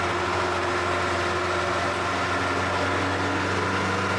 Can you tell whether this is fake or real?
real